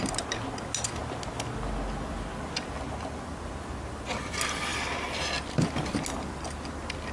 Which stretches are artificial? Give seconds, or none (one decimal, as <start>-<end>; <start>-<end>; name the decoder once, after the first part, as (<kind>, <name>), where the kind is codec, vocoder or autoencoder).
none